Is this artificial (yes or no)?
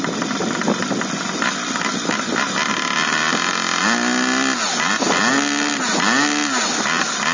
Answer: no